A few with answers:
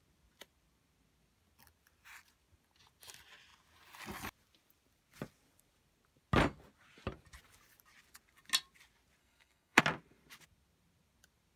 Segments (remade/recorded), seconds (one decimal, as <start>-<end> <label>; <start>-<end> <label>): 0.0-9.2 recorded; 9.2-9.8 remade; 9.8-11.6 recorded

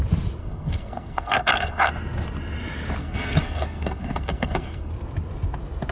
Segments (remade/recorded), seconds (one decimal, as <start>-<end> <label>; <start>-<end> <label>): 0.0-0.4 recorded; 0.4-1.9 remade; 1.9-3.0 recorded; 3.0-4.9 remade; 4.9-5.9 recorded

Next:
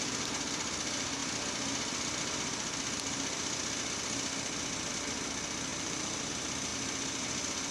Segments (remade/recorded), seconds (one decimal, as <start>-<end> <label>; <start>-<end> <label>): 0.0-5.7 recorded; 5.7-6.3 remade; 6.3-7.7 recorded

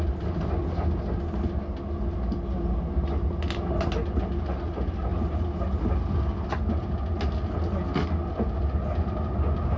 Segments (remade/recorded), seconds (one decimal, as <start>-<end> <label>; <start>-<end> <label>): 0.0-9.8 recorded

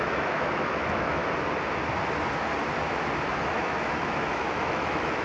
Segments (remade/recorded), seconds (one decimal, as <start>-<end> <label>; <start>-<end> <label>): 0.0-1.2 remade; 1.2-3.5 recorded; 3.5-5.2 remade